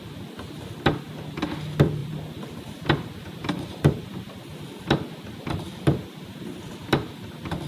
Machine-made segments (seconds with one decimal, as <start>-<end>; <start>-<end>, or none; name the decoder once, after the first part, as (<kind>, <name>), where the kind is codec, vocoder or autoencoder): 2.0-6.6 (vocoder, BigVGAN v2)